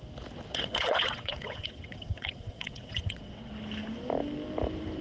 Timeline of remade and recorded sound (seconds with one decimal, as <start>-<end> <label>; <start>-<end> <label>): 0.0-0.5 recorded; 0.5-3.5 remade; 3.5-5.0 recorded